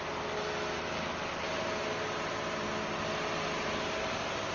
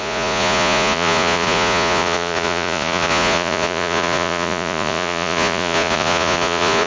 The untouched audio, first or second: first